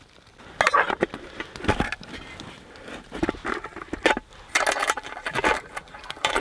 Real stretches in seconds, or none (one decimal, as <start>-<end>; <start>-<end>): 0.0-4.8